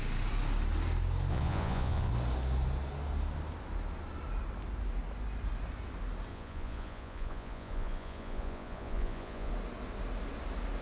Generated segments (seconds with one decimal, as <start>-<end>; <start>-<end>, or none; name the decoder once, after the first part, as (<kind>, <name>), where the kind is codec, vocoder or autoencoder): 1.3-2.1 (vocoder, Vocos); 6.3-9.5